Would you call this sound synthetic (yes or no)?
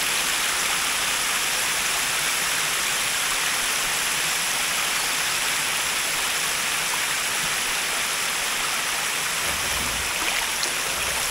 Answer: no